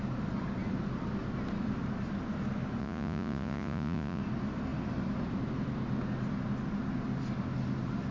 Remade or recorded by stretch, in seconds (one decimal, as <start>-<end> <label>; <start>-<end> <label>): 0.0-2.8 recorded; 2.8-4.2 remade; 4.2-8.1 recorded